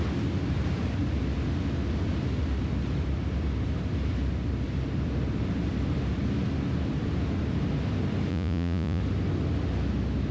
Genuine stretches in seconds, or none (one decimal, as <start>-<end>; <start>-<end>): 0.0-8.3; 9.0-10.3